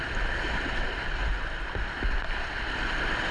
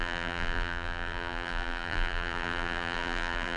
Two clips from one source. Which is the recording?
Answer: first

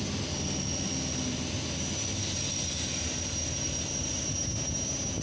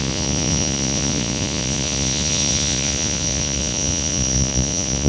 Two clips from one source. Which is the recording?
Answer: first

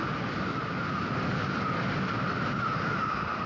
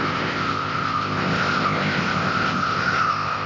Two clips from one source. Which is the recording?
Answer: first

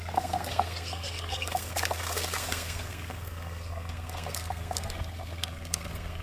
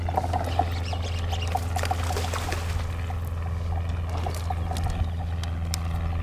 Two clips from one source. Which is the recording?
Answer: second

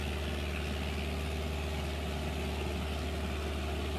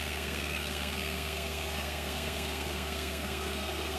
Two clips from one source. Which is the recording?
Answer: first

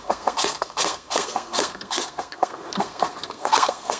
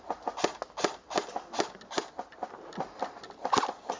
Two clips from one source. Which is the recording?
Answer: second